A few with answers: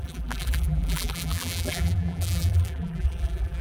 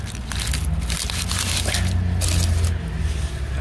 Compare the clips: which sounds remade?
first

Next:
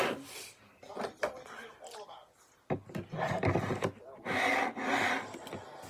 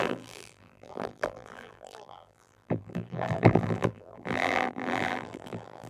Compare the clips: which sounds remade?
second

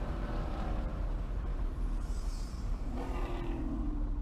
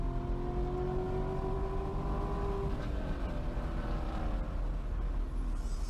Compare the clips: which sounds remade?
first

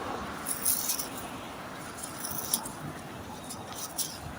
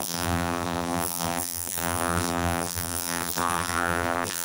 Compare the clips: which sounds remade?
second